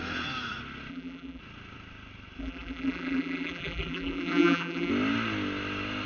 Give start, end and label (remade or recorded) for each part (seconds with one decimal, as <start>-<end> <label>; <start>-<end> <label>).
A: 0.0-0.9 recorded; 0.9-1.4 remade; 1.4-2.4 recorded; 2.4-4.9 remade; 4.9-6.1 recorded